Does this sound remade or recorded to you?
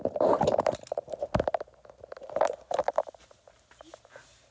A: recorded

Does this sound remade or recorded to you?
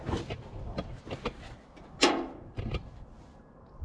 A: recorded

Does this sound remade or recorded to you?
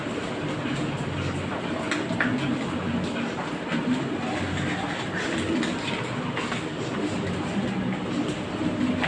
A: recorded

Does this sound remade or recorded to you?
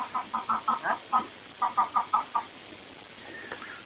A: recorded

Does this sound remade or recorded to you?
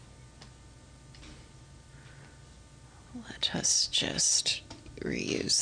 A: recorded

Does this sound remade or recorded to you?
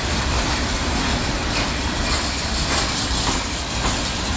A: recorded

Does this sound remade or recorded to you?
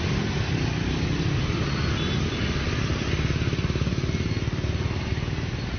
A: recorded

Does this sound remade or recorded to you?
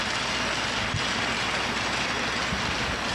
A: recorded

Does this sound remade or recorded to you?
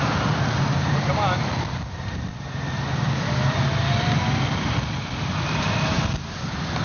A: recorded